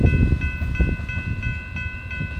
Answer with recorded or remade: recorded